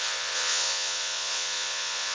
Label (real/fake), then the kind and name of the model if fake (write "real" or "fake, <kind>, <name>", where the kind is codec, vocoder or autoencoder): fake, vocoder, Vocos